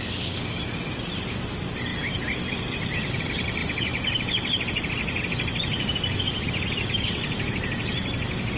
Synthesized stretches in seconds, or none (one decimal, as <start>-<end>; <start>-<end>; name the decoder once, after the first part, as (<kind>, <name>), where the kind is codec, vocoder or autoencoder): 1.9-3.2 (vocoder, BigVGAN v2); 3.6-6.6